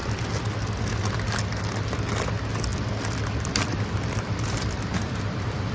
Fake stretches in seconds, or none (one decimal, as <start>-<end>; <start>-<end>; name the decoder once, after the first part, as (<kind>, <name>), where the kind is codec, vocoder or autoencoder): 2.2-5.7 (vocoder, BigVGAN v2)